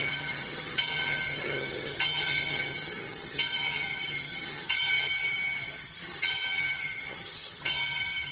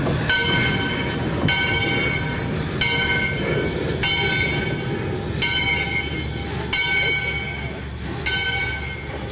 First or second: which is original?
second